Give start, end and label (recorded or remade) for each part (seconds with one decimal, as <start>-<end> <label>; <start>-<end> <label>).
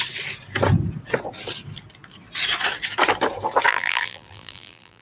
0.0-3.7 recorded; 3.7-5.0 remade